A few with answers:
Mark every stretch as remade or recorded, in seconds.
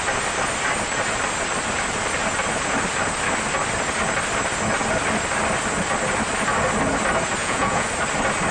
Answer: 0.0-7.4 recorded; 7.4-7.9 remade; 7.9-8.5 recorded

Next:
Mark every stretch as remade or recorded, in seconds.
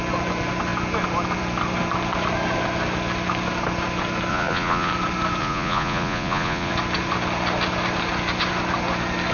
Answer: 0.0-4.3 recorded; 4.3-4.9 remade; 4.9-5.4 recorded; 5.4-6.7 remade; 6.7-9.3 recorded